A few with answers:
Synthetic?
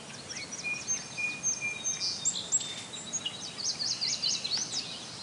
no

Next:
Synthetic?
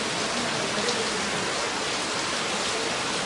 no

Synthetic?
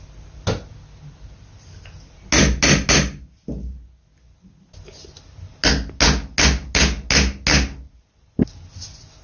no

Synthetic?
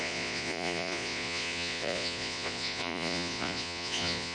yes